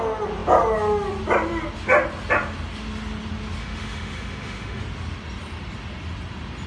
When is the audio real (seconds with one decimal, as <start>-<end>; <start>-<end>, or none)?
0.0-3.6; 4.8-6.7